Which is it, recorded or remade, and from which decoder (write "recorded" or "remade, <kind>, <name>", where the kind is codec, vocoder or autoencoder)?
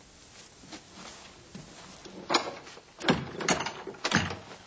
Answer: recorded